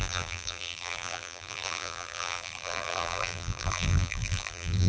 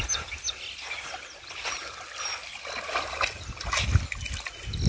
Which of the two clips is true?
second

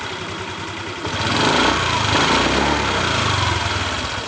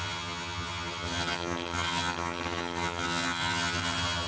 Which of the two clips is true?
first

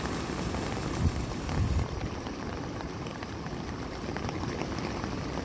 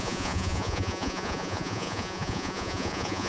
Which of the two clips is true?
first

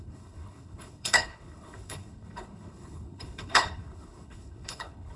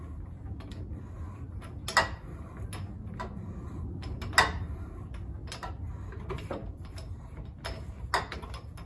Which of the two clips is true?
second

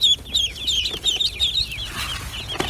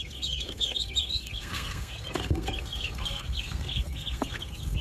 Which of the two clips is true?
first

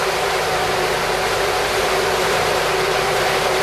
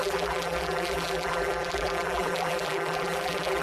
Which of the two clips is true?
first